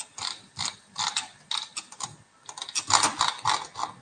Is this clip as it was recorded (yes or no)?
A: yes